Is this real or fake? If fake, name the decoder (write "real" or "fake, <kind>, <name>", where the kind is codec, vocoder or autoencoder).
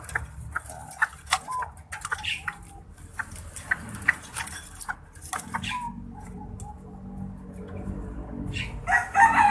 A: real